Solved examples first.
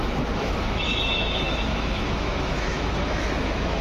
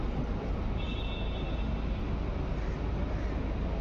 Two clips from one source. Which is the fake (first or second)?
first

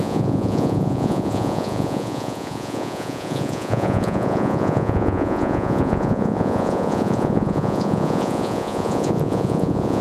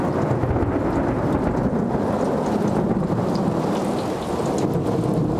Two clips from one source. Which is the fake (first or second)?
first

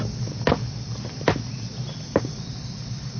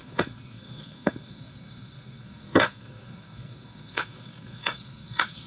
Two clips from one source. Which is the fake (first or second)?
second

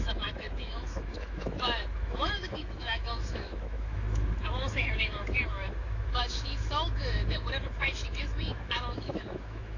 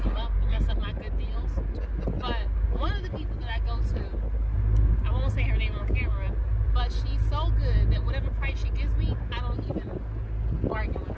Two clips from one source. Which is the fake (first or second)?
first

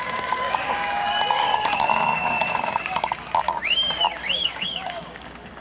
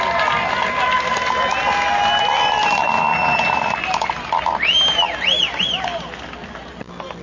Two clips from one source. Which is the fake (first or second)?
first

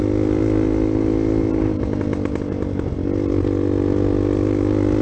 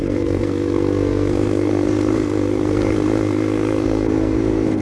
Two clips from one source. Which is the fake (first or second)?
second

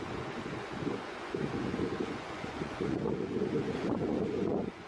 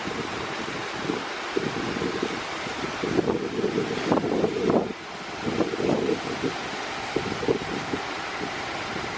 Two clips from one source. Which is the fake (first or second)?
first